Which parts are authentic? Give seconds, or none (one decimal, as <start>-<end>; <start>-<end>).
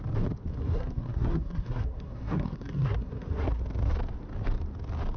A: 0.0-0.5; 3.6-5.2